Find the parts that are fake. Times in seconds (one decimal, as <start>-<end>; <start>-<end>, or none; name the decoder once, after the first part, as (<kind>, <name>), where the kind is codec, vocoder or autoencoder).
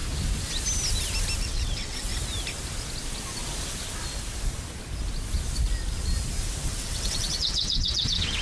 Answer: 1.4-2.1 (vocoder, WaveNeXt); 6.7-8.4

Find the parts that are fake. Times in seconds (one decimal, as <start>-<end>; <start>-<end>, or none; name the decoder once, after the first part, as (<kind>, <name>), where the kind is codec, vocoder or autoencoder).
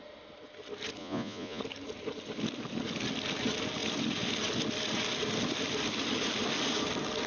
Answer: 1.0-1.6 (vocoder, Vocos)